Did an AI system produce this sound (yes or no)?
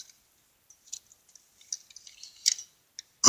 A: no